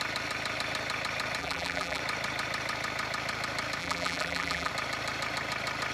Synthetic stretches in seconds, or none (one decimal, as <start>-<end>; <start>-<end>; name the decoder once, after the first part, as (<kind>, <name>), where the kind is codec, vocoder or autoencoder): 1.4-2.0 (vocoder, BigVGAN v2); 3.8-4.7